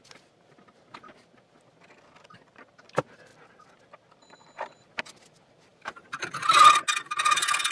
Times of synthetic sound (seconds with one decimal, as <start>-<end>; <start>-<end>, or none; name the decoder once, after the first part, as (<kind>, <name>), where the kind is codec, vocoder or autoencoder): 5.7-6.5 (vocoder, BigVGAN v2)